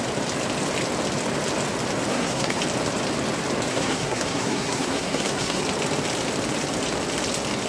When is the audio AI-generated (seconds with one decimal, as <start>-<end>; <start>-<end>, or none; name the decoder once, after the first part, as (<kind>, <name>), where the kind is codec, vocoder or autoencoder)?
2.1-2.6 (codec, SNAC); 3.7-5.6